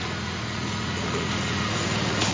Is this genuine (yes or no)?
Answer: no